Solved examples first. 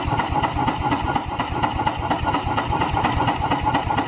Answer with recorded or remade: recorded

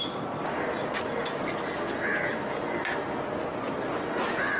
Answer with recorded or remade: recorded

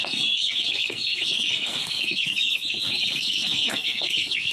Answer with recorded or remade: remade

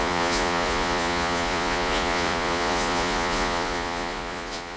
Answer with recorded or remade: remade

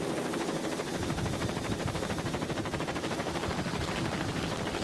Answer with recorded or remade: remade